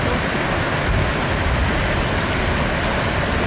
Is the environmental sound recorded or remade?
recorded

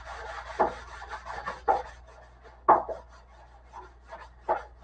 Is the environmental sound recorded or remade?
recorded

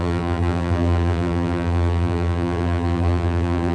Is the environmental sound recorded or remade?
remade